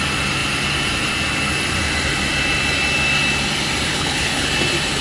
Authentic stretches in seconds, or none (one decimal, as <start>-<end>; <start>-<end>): 0.0-3.9; 4.5-5.0